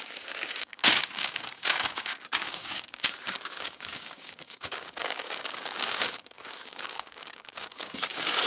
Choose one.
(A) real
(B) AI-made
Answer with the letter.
B